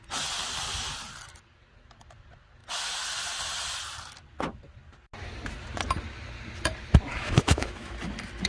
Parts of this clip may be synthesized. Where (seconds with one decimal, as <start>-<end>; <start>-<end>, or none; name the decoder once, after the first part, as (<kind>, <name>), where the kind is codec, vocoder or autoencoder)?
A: 7.1-7.9 (autoencoder, DAC-VAE)